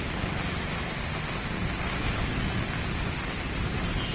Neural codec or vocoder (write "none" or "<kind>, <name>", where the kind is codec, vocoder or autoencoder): none